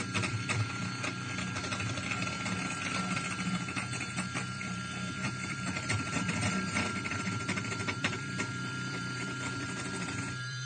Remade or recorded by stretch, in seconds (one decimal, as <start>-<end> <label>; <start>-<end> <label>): 0.0-0.8 remade; 0.8-4.0 recorded; 4.0-10.7 remade